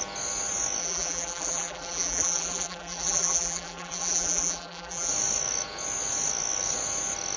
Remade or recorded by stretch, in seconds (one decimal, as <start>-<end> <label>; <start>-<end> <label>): 0.0-0.8 recorded; 0.8-5.1 remade; 5.1-7.4 recorded

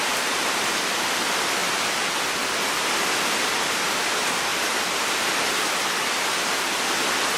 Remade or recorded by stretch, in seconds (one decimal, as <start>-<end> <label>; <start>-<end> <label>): 0.0-7.4 remade

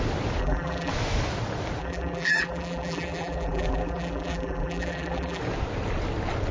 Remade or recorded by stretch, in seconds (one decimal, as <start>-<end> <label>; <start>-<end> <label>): 0.0-0.4 recorded; 0.4-0.9 remade; 0.9-1.8 recorded; 1.8-5.4 remade; 5.4-6.5 recorded

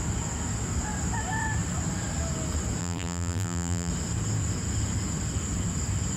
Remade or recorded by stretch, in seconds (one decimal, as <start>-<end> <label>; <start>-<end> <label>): 0.0-2.8 recorded; 2.8-3.9 remade; 3.9-6.2 recorded

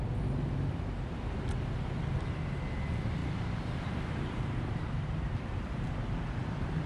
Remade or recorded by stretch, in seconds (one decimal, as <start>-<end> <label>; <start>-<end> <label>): 0.0-3.2 recorded; 3.2-6.9 remade